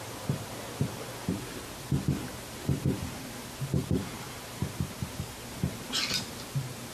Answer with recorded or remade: recorded